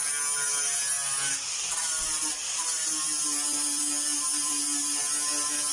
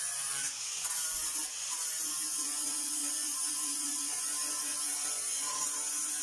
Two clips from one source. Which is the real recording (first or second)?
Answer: first